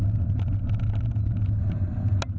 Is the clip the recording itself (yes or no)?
yes